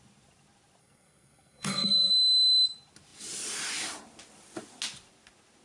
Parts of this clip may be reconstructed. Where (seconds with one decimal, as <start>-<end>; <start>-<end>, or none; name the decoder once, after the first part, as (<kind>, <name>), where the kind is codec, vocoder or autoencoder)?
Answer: 0.8-2.1 (codec, SNAC)